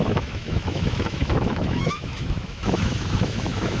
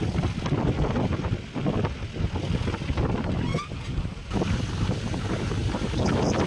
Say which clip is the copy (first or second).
first